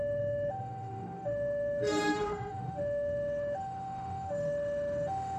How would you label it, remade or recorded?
remade